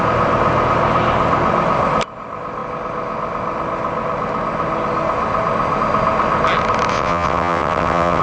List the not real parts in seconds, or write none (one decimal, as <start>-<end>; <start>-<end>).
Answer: 6.9-8.2